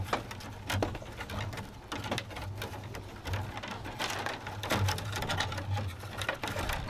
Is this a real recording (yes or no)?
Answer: yes